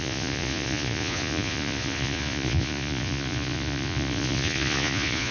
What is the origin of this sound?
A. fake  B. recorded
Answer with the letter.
A